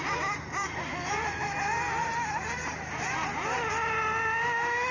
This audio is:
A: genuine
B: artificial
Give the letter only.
A